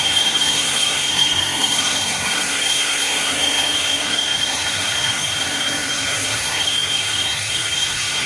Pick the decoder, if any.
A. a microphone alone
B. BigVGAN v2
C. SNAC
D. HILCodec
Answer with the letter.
C